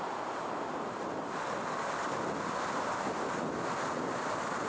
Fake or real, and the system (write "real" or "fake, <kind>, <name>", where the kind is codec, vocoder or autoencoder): real